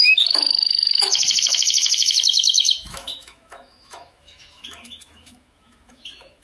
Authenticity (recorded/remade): remade